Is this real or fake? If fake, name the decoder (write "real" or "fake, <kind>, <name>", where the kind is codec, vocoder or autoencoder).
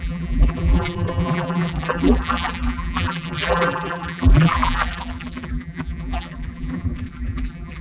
fake, vocoder, BigVGAN v2